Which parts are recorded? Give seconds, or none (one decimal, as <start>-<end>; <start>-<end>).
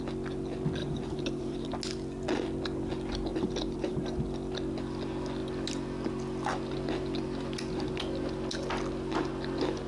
0.0-0.8; 1.7-3.3; 4.2-9.9